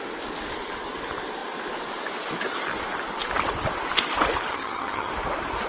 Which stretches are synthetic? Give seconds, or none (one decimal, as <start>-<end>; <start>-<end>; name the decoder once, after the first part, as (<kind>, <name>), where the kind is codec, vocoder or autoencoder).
4.5-5.1 (vocoder, HiFi-GAN)

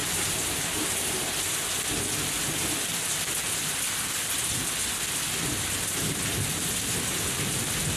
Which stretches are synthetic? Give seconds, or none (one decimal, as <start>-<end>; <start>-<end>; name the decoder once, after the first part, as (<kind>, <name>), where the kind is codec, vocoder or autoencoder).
0.0-1.6 (vocoder, BigVGAN v2)

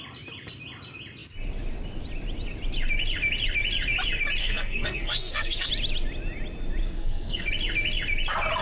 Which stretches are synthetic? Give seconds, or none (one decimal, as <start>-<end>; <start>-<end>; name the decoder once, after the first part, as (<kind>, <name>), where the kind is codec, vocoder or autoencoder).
4.4-5.7 (codec, SNAC); 6.8-7.5

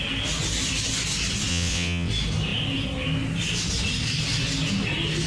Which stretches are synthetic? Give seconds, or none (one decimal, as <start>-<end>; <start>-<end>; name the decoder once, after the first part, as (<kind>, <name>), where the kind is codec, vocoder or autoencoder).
1.5-2.1 (vocoder, WaveNeXt)

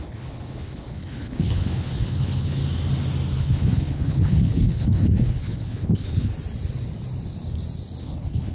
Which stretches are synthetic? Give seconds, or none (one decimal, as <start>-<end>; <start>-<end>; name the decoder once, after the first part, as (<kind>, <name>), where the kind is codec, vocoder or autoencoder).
0.0-2.6 (codec, HILCodec); 3.4-6.3; 8.0-8.5